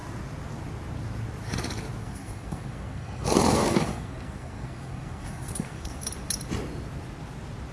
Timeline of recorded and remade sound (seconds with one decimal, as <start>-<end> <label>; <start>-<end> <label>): 0.0-2.0 recorded; 2.0-6.0 remade; 6.0-7.7 recorded